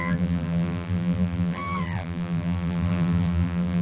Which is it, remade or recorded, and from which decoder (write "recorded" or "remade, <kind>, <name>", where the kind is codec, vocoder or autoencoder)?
remade, vocoder, BigVGAN v2